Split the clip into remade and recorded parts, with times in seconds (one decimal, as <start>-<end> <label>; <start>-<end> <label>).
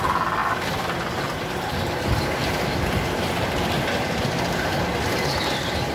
0.0-5.9 recorded